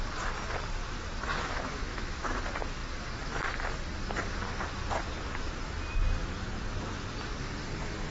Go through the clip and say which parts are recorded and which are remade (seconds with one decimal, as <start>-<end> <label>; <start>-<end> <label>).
0.0-1.3 recorded; 1.3-2.4 remade; 2.4-8.1 recorded